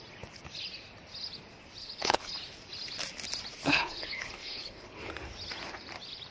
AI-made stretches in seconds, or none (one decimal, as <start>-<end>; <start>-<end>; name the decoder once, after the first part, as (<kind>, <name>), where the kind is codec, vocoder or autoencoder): 1.8-2.3 (codec, HILCodec); 3.6-5.1